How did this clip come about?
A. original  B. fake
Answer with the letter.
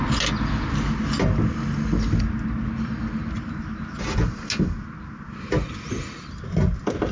A